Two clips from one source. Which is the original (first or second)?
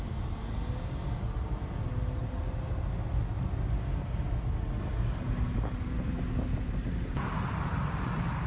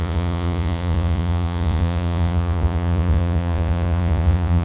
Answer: first